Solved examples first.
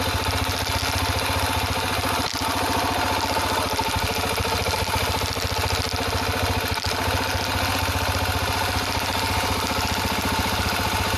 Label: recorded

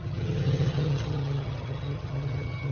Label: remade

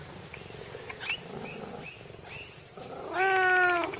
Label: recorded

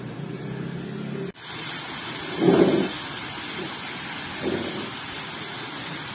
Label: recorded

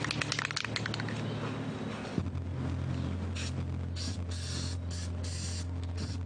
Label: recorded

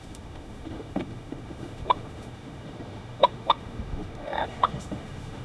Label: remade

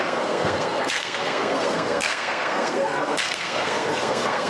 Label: remade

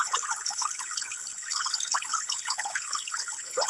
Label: remade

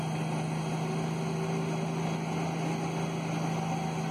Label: recorded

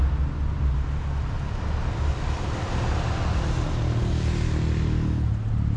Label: recorded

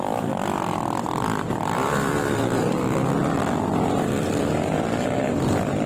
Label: recorded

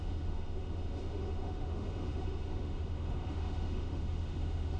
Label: remade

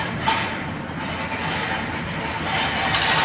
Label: recorded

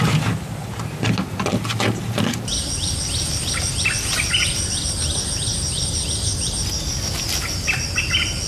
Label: recorded